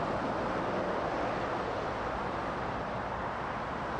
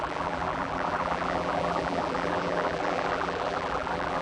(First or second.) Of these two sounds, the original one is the first